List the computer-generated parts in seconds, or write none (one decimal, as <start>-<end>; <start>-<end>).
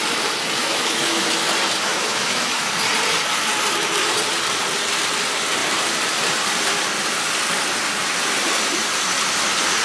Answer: 0.6-1.3; 1.9-2.7